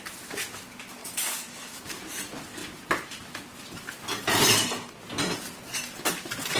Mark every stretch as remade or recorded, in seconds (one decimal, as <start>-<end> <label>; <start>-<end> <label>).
0.0-1.0 recorded; 1.0-2.0 remade; 2.0-6.6 recorded